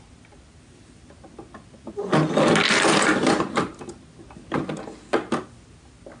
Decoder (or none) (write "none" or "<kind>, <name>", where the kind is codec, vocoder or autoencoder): none